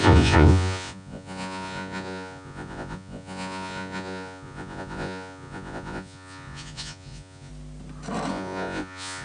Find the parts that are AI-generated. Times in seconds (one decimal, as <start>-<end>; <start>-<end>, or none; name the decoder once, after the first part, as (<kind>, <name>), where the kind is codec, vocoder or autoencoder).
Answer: 0.0-7.5 (vocoder, Vocos); 8.3-9.2